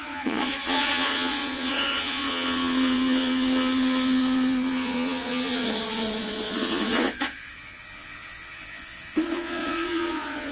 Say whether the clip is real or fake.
fake